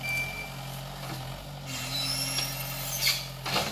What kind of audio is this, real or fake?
real